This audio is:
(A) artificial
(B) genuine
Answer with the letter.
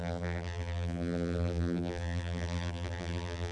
A